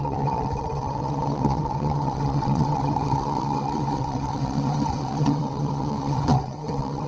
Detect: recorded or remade remade